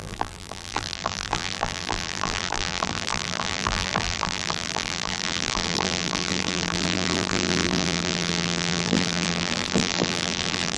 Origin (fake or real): fake